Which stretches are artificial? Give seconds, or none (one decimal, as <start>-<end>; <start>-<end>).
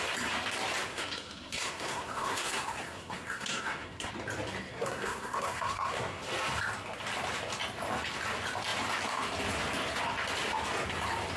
0.9-4.1; 4.7-6.2